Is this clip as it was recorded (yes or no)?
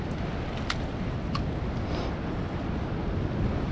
yes